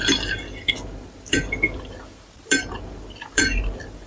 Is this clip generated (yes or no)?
yes